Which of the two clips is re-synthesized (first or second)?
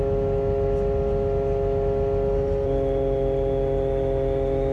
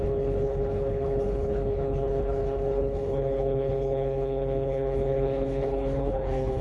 second